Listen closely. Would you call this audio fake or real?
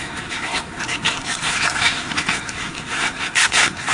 fake